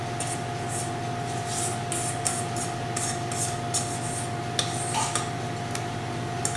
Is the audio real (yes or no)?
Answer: yes